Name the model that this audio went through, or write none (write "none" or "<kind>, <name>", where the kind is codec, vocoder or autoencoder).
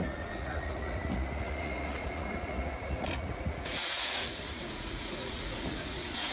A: vocoder, Vocos